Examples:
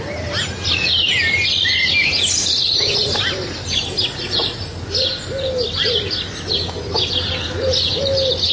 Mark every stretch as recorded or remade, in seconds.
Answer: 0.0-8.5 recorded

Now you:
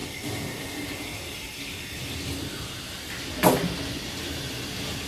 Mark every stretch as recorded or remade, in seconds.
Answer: 0.0-5.1 recorded